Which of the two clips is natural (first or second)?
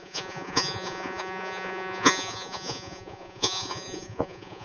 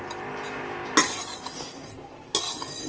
second